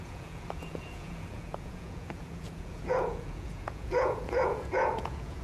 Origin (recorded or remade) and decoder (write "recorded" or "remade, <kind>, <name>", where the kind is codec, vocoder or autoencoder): remade, vocoder, Vocos